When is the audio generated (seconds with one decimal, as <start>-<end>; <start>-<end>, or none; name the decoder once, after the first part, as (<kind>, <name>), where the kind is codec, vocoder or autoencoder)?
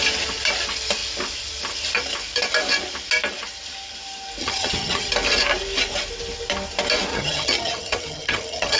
4.4-5.1 (vocoder, HiFi-GAN); 7.1-8.8